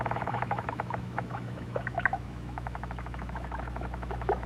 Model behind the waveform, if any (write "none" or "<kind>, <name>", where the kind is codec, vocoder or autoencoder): autoencoder, DAC-VAE